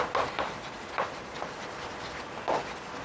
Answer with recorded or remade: recorded